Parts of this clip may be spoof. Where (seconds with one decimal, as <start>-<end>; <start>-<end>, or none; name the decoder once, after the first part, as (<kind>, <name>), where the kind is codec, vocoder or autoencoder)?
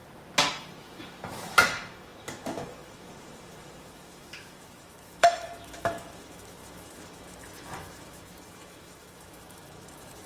0.6-10.3 (autoencoder, DAC-VAE)